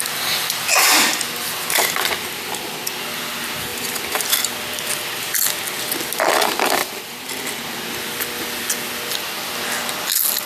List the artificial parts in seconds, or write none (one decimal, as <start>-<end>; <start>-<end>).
none